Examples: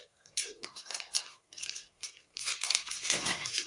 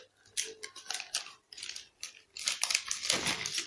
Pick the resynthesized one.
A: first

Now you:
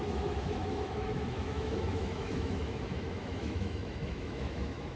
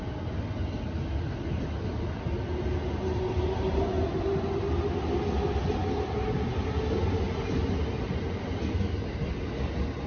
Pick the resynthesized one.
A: first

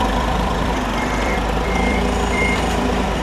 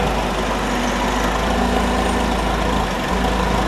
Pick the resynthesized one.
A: first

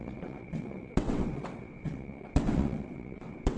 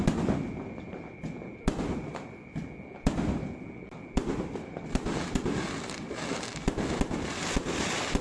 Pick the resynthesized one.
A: first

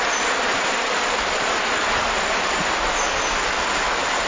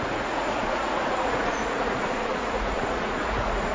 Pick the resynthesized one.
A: second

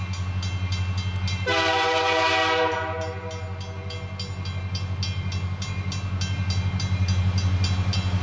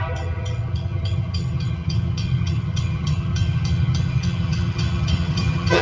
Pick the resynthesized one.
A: second